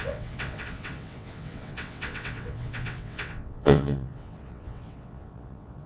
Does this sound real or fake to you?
fake